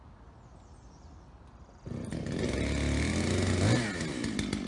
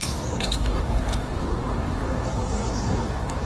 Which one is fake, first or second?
second